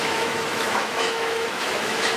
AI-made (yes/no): yes